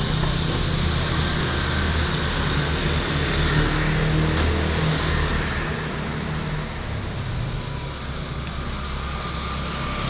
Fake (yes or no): no